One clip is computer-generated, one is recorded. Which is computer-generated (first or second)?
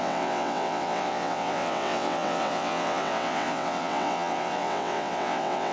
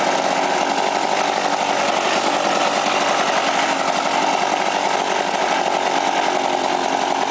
first